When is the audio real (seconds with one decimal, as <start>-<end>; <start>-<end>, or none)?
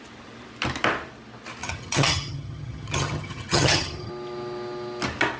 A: 0.0-1.6; 4.1-5.4